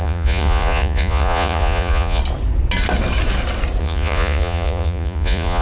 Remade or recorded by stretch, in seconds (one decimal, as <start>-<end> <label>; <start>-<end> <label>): 0.0-2.2 remade; 2.2-3.8 recorded; 3.8-5.6 remade